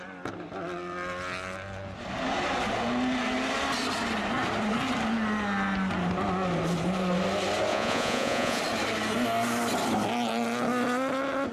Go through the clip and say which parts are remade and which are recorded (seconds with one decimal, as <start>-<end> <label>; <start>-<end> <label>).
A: 0.0-7.7 recorded; 7.7-8.6 remade; 8.6-11.5 recorded